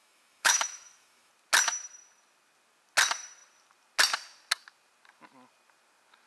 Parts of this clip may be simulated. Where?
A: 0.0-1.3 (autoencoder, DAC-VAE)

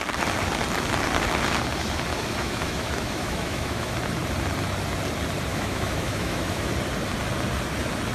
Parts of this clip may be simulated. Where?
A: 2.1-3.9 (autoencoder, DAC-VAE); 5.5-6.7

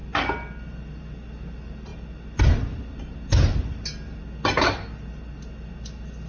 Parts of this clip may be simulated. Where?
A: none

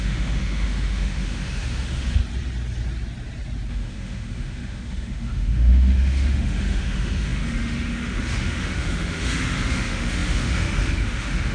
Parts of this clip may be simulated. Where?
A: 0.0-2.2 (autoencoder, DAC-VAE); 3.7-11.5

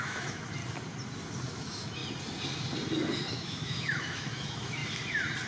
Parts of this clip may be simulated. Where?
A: 0.0-0.6 (autoencoder, DAC-VAE); 1.5-2.0; 3.3-4.8

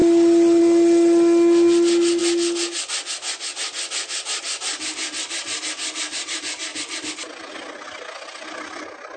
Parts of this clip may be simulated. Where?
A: none

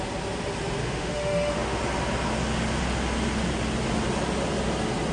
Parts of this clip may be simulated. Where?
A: 0.8-1.8 (autoencoder, DAC-VAE)

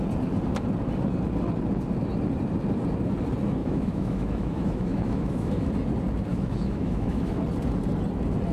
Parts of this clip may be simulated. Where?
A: 3.6-5.7 (autoencoder, DAC-VAE); 6.3-7.4